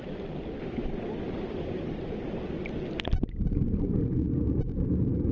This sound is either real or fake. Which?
real